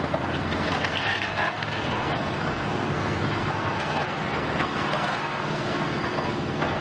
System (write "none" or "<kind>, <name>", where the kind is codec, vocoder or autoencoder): codec, SNAC